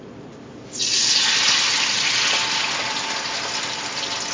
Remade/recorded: recorded